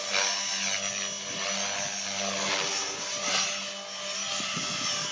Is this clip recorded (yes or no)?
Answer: yes